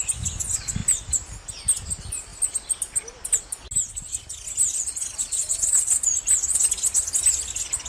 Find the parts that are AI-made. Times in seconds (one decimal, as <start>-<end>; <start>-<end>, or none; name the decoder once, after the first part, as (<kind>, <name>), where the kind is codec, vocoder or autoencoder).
none